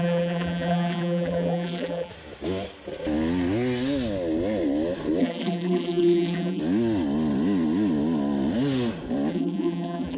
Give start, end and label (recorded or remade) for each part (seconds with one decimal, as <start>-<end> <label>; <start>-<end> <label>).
0.0-2.1 remade; 2.1-5.2 recorded; 5.2-6.6 remade; 6.6-9.3 recorded; 9.3-10.2 remade